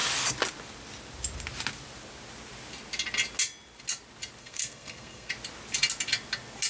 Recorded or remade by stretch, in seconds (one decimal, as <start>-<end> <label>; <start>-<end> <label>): 0.0-4.4 recorded; 4.4-5.3 remade; 5.3-6.7 recorded

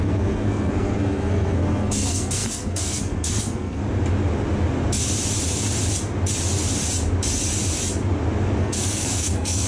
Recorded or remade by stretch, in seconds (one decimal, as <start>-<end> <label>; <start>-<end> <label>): 0.0-3.8 remade; 3.8-8.6 recorded; 8.6-9.7 remade

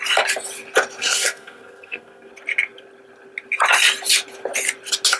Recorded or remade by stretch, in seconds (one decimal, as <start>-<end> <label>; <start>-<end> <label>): 0.0-1.0 recorded; 1.0-2.3 remade; 2.3-5.2 recorded

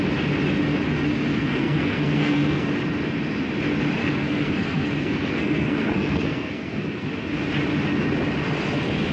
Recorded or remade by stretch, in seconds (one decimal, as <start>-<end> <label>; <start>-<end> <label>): 0.0-1.3 recorded; 1.3-2.7 remade; 2.7-4.0 recorded; 4.0-7.1 remade; 7.1-9.1 recorded